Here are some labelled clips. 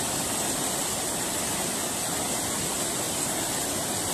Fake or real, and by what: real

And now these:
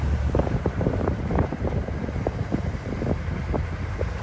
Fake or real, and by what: fake, vocoder, BigVGAN v2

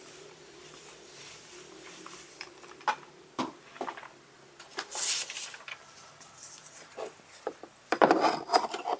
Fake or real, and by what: fake, vocoder, BigVGAN v2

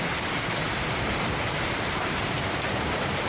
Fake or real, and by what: fake, vocoder, BigVGAN v2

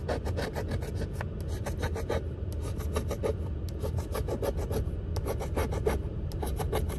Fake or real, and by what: real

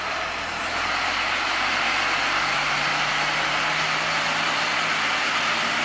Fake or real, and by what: real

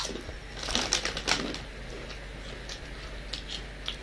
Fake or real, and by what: real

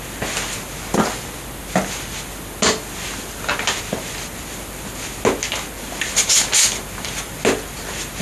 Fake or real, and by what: real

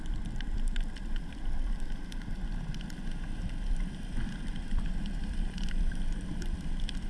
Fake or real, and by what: fake, vocoder, BigVGAN v2